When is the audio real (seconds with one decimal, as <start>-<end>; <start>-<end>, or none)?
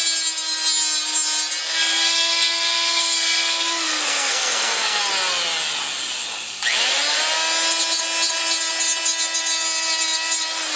0.0-1.7; 5.0-10.8